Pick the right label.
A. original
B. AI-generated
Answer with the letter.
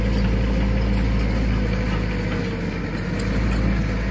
A